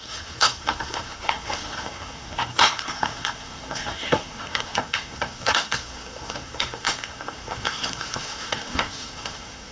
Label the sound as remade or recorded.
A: remade